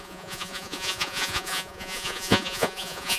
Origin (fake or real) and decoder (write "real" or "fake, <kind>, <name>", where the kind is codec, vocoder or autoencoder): fake, vocoder, Vocos